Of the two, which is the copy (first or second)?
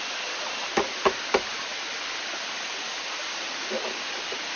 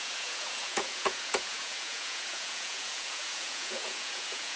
second